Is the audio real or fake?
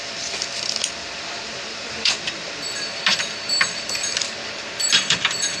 fake